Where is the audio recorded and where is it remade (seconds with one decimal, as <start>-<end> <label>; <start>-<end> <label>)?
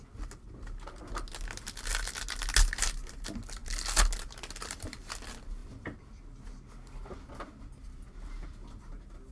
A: 0.0-9.3 recorded